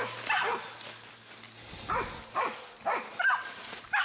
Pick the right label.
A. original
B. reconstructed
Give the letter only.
A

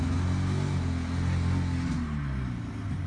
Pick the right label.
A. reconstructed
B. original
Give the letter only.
B